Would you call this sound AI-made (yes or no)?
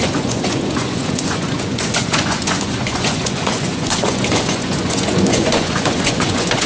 yes